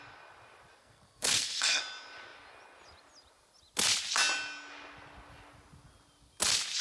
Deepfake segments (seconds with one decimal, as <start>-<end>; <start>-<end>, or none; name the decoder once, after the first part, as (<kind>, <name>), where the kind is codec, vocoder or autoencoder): 0.8-1.8 (codec, SNAC)